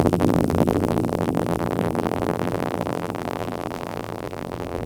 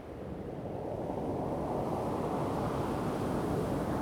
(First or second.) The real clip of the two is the second